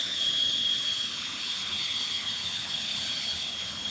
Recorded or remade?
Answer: remade